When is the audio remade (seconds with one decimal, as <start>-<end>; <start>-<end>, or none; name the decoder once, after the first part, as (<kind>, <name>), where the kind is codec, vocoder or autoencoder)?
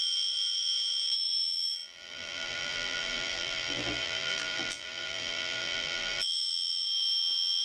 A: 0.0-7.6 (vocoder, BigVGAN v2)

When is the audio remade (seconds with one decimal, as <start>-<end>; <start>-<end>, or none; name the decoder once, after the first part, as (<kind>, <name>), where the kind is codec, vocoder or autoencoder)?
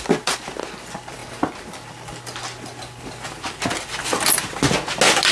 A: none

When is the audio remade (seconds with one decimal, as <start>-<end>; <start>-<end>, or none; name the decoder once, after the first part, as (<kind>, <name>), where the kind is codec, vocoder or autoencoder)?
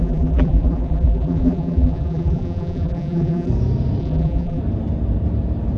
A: 0.0-3.5 (vocoder, BigVGAN v2); 4.0-4.6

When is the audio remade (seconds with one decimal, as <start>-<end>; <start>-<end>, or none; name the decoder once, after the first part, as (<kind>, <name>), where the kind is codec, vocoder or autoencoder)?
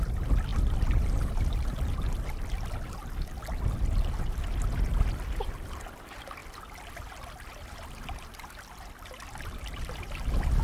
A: none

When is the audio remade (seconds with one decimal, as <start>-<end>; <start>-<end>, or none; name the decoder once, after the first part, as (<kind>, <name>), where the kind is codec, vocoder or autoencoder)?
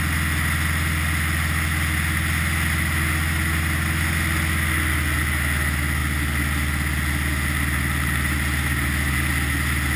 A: none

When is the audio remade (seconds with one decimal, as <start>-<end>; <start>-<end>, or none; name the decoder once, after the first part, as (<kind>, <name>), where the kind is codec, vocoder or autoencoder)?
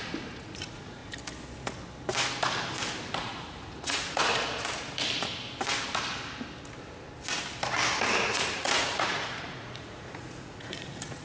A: 0.0-1.0 (vocoder, Vocos); 3.2-4.3; 8.2-11.2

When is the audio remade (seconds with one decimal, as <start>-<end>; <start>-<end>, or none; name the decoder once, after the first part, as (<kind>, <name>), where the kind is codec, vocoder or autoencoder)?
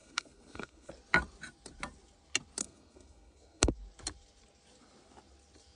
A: 0.0-0.9 (codec, SNAC); 2.6-3.7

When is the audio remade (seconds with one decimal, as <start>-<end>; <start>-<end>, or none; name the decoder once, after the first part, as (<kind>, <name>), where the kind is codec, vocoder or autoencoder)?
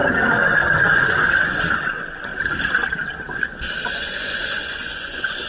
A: 0.8-2.3 (vocoder, Vocos); 3.9-5.5